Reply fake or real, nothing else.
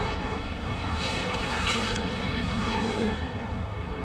fake